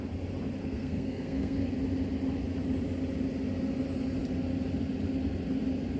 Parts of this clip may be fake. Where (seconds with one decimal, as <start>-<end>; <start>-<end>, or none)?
0.6-1.7

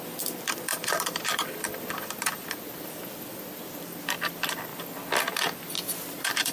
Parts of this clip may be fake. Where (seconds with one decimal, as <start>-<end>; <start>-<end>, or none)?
0.0-4.7; 5.3-6.5

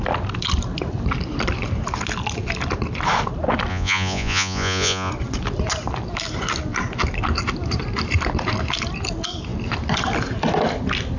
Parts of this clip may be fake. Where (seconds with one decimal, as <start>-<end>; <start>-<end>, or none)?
3.7-5.1